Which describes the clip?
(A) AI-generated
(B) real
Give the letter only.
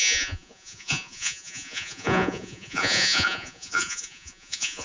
A